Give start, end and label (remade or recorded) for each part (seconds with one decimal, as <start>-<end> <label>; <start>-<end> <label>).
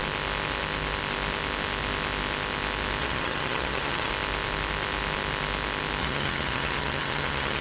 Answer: 0.0-3.0 recorded; 3.0-4.1 remade; 4.1-6.0 recorded; 6.0-7.6 remade